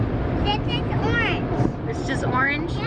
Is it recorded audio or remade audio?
recorded